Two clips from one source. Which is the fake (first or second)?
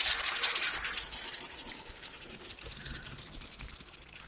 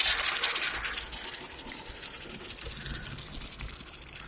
first